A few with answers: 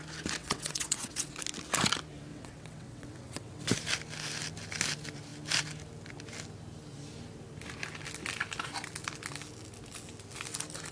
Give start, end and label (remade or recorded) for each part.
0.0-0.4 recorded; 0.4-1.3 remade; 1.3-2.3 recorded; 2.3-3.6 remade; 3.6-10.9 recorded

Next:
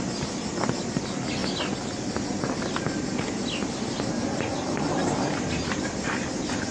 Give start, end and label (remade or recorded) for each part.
0.0-6.7 recorded

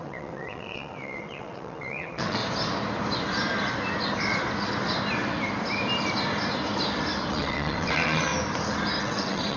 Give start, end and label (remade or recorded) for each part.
0.0-2.4 remade; 2.4-7.3 recorded; 7.3-8.3 remade; 8.3-9.0 recorded; 9.0-9.6 remade

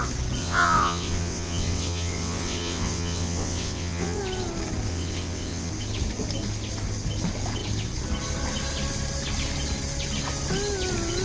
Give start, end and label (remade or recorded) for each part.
0.0-0.4 recorded; 0.4-4.2 remade; 4.2-4.9 recorded; 4.9-5.7 remade; 5.7-11.2 recorded

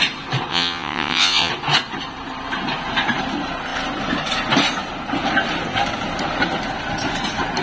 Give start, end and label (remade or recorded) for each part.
0.0-0.5 recorded; 0.5-1.5 remade; 1.5-7.6 recorded

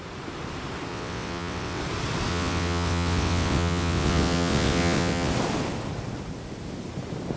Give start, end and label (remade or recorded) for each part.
0.0-0.9 recorded; 0.9-1.8 remade; 1.8-2.3 recorded; 2.3-5.3 remade; 5.3-7.4 recorded

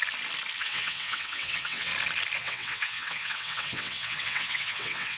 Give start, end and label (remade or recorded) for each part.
0.0-0.6 recorded; 0.6-1.9 remade; 1.9-2.4 recorded; 2.4-5.2 remade